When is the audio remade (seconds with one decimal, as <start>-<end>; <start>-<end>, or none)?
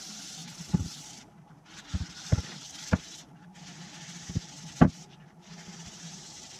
0.4-1.5; 2.3-6.6